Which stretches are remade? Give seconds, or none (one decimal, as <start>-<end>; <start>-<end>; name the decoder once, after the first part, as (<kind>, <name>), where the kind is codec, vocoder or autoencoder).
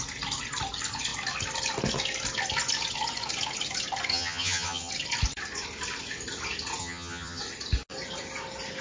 4.1-4.9 (vocoder, HiFi-GAN); 6.8-7.4